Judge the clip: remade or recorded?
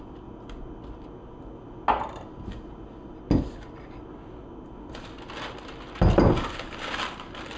recorded